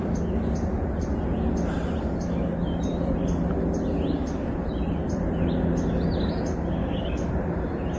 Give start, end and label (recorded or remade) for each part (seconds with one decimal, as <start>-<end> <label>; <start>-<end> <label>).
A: 0.0-6.8 recorded; 6.8-7.3 remade; 7.3-8.0 recorded